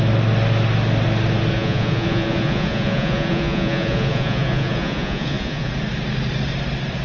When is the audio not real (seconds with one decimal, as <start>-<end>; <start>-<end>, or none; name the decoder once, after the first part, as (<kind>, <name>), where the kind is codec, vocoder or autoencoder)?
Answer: 1.5-5.7 (vocoder, Vocos)